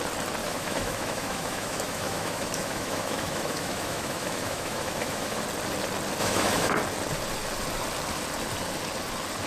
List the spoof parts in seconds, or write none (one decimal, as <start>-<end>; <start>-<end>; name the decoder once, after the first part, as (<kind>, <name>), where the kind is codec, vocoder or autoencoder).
0.4-5.4 (autoencoder, DAC-VAE); 6.2-6.7